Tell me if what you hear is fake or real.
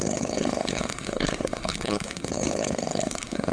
fake